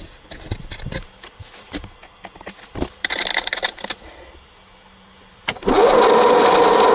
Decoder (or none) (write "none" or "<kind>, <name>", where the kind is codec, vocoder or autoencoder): none